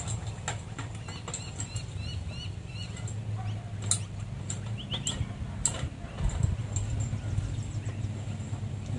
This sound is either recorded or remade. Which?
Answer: recorded